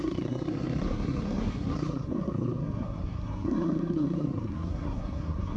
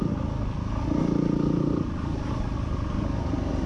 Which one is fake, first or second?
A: first